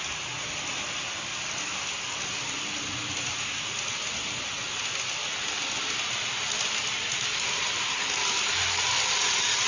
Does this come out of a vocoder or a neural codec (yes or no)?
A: no